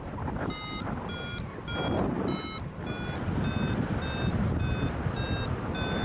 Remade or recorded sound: recorded